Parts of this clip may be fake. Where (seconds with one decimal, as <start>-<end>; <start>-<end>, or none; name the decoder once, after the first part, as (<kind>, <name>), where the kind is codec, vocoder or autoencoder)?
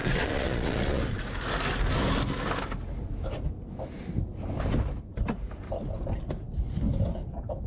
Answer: 0.0-1.0 (vocoder, Vocos)